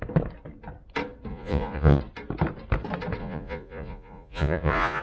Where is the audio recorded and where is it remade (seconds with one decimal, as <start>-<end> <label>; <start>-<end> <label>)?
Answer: 0.0-1.3 recorded; 1.3-2.0 remade; 2.0-3.2 recorded; 3.2-5.0 remade

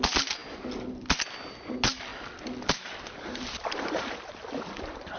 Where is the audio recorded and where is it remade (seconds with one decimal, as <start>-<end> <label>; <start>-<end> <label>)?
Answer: 0.0-5.2 recorded

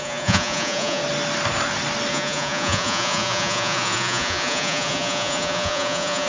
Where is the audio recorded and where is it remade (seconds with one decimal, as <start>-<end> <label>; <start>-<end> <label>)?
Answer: 0.0-1.0 remade; 1.0-2.1 recorded; 2.1-6.3 remade

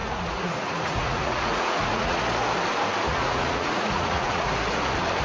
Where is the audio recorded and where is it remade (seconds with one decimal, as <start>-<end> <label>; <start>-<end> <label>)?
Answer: 0.0-2.2 remade; 2.2-3.1 recorded; 3.1-4.5 remade; 4.5-5.2 recorded

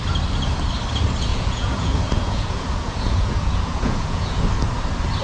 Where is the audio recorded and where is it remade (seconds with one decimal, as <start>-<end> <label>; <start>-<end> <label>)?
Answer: 0.0-1.3 recorded; 1.3-4.4 remade; 4.4-5.2 recorded